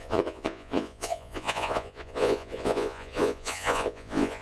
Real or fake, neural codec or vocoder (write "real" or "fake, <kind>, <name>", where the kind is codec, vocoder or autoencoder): fake, vocoder, Vocos